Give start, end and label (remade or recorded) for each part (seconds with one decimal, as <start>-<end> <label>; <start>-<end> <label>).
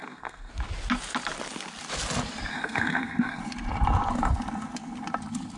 0.0-0.5 remade; 0.5-2.5 recorded; 2.5-3.4 remade; 3.4-5.6 recorded